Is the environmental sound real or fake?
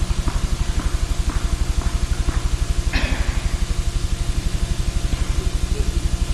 real